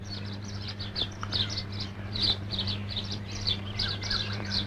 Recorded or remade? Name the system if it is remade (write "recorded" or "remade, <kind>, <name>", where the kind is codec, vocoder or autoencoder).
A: remade, vocoder, BigVGAN v2